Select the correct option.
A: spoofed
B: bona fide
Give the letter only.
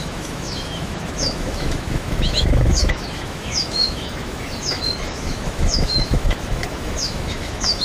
A